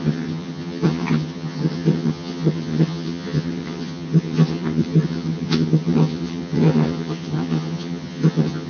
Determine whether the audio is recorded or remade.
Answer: remade